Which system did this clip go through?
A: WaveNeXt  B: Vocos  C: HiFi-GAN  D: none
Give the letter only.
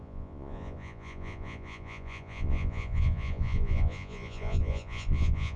B